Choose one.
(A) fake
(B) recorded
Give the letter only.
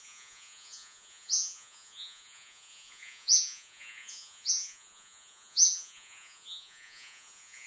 A